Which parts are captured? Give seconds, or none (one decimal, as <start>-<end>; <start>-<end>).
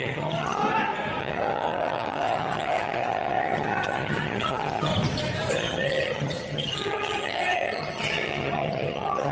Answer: 0.6-1.2; 4.9-5.5